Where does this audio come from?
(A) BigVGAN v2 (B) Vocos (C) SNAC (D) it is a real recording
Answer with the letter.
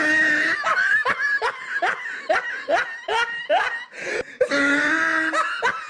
D